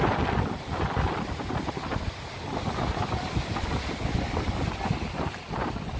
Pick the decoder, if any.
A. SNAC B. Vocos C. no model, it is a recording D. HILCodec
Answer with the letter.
C